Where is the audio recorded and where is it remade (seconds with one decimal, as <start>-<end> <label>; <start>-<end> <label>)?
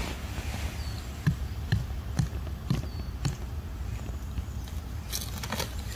0.0-6.0 recorded